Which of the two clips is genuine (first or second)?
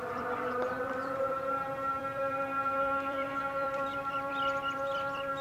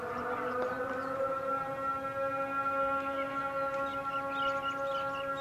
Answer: second